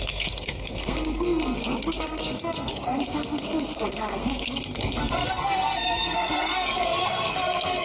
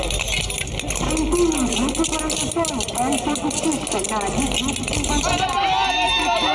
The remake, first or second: first